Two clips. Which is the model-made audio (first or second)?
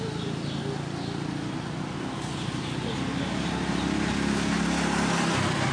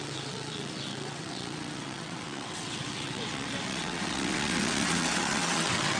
second